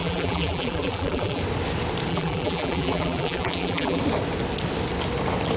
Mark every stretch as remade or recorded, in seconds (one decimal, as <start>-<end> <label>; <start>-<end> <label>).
0.0-1.4 remade; 1.4-2.1 recorded; 2.1-4.0 remade; 4.0-5.6 recorded

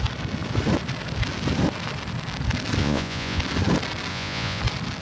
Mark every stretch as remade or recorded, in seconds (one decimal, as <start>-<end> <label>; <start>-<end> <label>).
0.0-2.8 recorded; 2.8-3.4 remade; 3.4-4.1 recorded; 4.1-4.6 remade; 4.6-5.0 recorded